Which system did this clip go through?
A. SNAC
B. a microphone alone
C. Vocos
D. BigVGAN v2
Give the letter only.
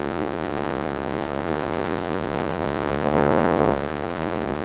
C